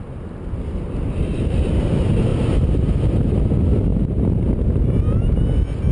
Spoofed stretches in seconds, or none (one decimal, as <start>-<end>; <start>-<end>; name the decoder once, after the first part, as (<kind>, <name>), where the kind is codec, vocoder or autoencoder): 1.3-1.9 (vocoder, BigVGAN v2); 2.3-3.4; 3.9-4.6